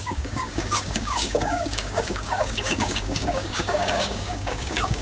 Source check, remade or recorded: remade